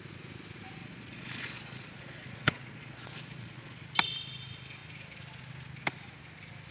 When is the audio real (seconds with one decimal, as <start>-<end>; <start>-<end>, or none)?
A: 0.0-0.8; 3.8-6.7